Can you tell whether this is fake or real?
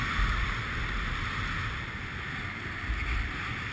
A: real